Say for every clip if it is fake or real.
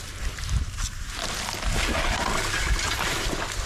real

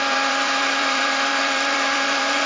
fake